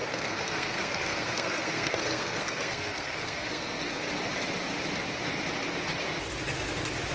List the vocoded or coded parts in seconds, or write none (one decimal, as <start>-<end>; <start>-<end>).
0.0-4.1